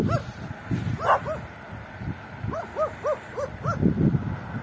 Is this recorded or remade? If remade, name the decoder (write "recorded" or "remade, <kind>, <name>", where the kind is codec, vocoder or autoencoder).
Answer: recorded